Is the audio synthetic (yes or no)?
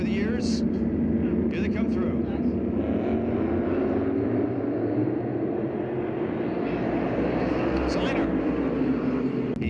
no